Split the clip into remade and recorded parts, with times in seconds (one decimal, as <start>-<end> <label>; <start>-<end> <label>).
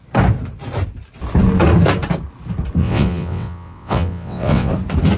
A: 0.0-2.8 recorded; 2.8-4.7 remade; 4.7-5.2 recorded